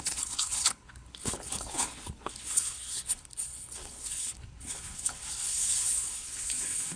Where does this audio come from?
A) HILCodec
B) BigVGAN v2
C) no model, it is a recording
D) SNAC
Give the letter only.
A